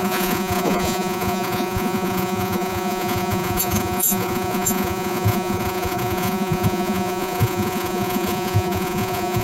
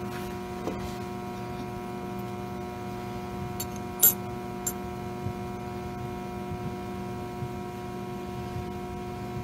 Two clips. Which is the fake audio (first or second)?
first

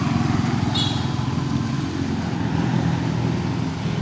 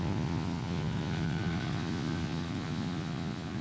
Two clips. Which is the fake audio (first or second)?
second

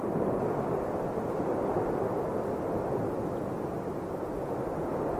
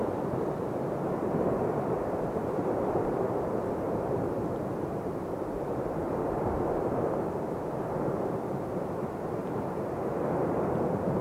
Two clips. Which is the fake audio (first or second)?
second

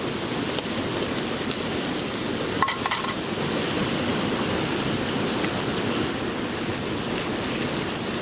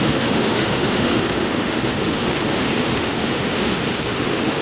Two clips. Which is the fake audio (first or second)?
second